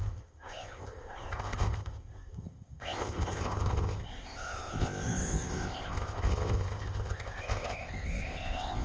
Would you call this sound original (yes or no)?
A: no